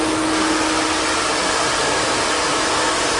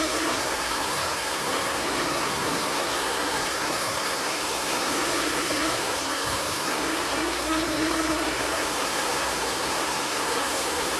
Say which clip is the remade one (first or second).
second